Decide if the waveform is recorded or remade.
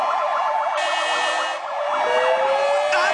recorded